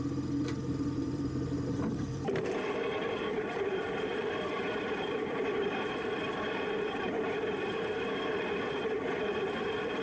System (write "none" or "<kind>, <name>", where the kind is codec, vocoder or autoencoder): vocoder, BigVGAN v2